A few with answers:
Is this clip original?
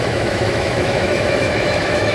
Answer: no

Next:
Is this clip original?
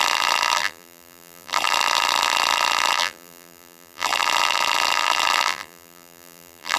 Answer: no